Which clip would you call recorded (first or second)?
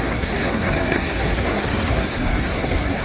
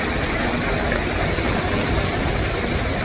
second